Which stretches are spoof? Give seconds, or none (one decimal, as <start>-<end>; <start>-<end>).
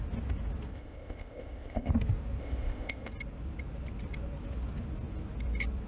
0.7-1.9; 2.4-3.1